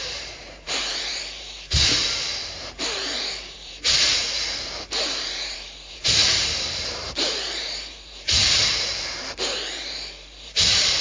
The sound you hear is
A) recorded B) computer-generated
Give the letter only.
B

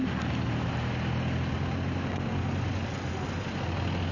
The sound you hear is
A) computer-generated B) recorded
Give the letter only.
B